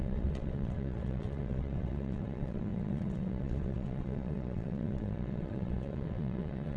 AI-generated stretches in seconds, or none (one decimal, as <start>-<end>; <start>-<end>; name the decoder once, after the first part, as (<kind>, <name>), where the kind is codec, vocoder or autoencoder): 0.0-6.8 (vocoder, WaveNeXt)